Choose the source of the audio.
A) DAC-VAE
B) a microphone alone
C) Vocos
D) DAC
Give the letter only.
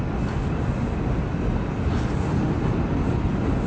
B